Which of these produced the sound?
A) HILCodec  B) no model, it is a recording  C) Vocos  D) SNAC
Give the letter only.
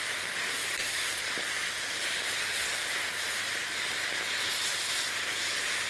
B